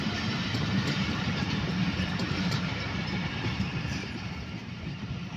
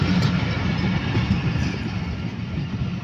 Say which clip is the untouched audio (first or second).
second